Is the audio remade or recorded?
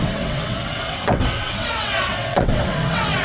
remade